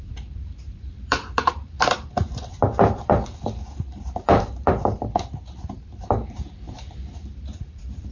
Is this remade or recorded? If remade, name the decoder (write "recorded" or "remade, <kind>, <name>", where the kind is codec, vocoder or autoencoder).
remade, vocoder, BigVGAN v2